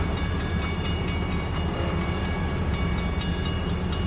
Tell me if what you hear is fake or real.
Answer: real